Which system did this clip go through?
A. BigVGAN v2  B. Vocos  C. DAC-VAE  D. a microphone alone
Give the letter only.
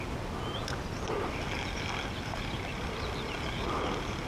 D